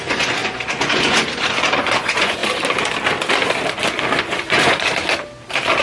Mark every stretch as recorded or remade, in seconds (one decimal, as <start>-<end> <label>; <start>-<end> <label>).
0.0-2.4 remade; 2.4-4.2 recorded; 4.2-5.0 remade; 5.0-5.8 recorded